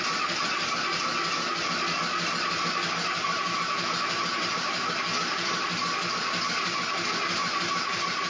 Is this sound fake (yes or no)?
no